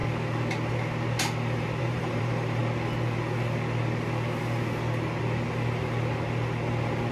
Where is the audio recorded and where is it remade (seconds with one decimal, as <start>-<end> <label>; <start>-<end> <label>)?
0.0-1.8 recorded; 1.8-2.6 remade; 2.6-7.1 recorded